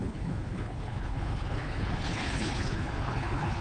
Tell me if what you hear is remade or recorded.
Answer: remade